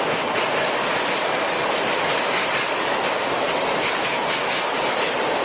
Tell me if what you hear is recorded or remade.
recorded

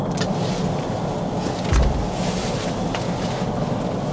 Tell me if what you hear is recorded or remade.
recorded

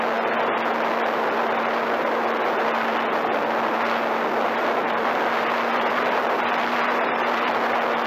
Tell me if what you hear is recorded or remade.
recorded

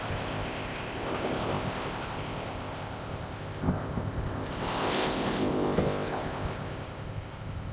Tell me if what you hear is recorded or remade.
remade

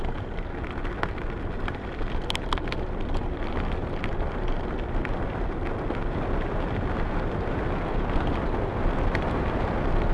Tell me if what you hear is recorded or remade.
recorded